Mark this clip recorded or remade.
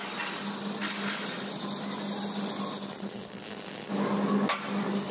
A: recorded